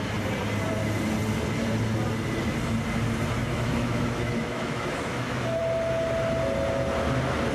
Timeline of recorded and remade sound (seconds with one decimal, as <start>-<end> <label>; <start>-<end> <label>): 0.0-3.4 recorded; 3.4-5.6 remade; 5.6-7.5 recorded